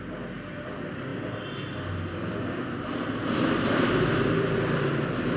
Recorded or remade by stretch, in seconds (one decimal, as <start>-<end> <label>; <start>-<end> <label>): 0.0-5.4 recorded

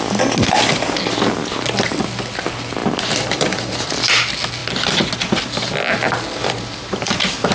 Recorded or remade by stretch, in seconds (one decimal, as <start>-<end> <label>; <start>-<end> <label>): 0.0-2.8 recorded; 2.8-3.8 remade; 3.8-6.4 recorded; 6.4-7.1 remade; 7.1-7.5 recorded